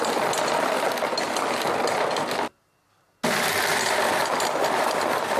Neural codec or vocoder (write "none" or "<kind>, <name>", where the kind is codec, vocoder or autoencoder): none